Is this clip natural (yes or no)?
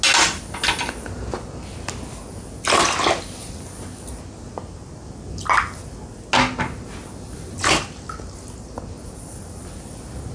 yes